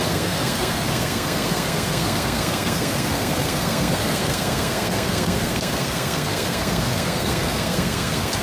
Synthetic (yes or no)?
yes